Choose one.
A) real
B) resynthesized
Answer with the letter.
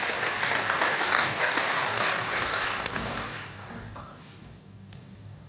B